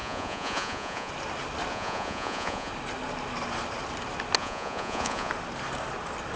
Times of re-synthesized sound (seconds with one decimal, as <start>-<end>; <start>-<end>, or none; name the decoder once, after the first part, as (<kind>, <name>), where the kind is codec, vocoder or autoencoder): 0.0-1.1 (vocoder, Vocos); 1.7-2.7; 4.4-5.3